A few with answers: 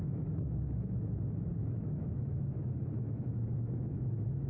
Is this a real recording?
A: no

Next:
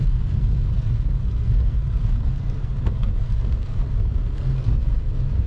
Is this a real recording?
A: no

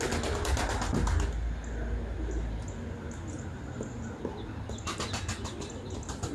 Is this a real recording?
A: yes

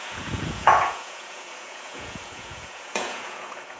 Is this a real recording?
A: no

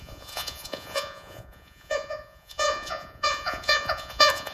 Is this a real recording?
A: no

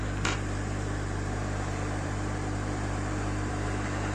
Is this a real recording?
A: no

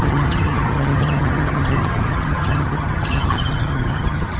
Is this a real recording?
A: no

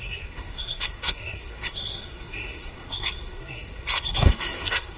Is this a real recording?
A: no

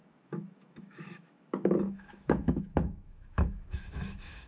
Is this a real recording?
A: no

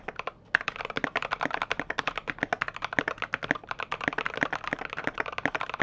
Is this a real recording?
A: yes